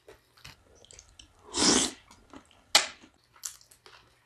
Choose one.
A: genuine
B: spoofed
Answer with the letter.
A